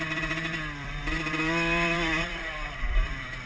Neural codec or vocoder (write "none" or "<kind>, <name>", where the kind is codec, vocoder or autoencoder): vocoder, BigVGAN v2